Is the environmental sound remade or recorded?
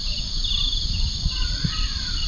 remade